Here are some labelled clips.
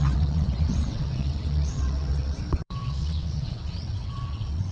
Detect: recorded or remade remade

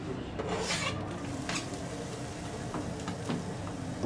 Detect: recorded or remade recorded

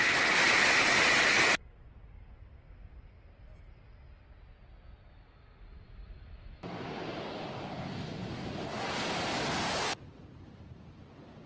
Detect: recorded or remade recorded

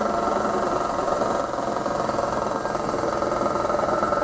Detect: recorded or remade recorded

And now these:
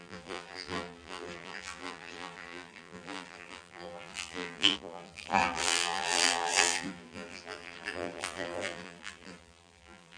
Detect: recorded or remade remade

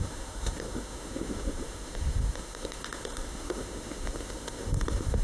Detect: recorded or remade remade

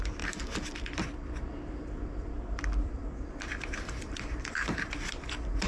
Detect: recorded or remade remade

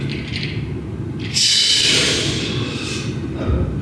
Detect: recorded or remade recorded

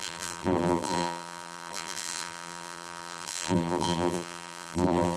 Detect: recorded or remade remade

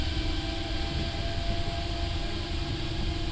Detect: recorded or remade recorded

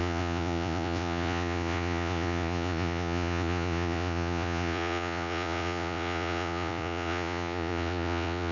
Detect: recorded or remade remade